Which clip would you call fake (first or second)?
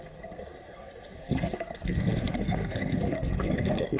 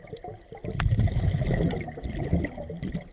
first